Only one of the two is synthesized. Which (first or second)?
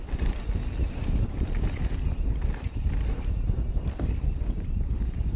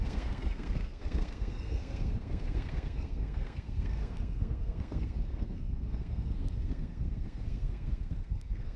second